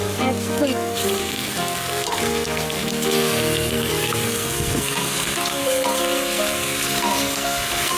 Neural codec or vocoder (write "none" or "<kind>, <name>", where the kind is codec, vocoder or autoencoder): codec, SNAC